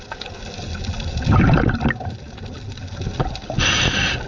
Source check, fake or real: real